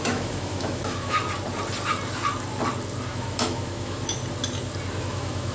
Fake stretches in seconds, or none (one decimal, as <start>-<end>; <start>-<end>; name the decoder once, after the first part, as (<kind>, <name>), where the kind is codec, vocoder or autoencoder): 0.0-1.2 (autoencoder, DAC-VAE); 3.1-4.2; 5.0-5.5